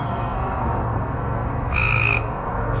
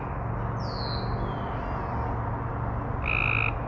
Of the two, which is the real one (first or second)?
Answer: second